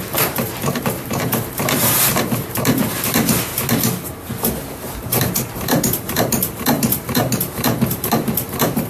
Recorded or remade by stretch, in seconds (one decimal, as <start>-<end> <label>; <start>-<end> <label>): 0.0-3.5 remade; 3.5-4.8 recorded; 4.8-8.9 remade

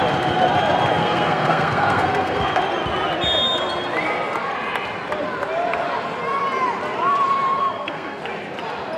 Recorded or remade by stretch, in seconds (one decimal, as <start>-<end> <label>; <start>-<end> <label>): 0.0-1.0 recorded; 1.0-2.6 remade; 2.6-7.6 recorded; 7.6-8.2 remade; 8.2-9.0 recorded

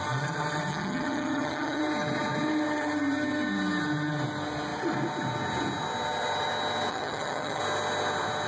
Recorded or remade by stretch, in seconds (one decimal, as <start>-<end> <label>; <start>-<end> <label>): 0.0-0.7 recorded; 0.7-1.8 remade; 1.8-6.9 recorded; 6.9-7.6 remade; 7.6-8.5 recorded

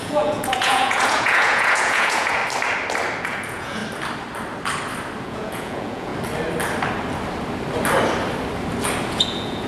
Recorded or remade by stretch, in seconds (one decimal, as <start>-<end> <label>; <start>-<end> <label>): 0.0-2.4 remade; 2.4-3.2 recorded; 3.2-3.8 remade; 3.8-5.2 recorded; 5.2-6.1 remade; 6.1-9.1 recorded; 9.1-9.7 remade